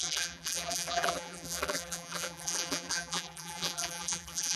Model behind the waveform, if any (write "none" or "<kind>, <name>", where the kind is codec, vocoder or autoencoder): vocoder, BigVGAN v2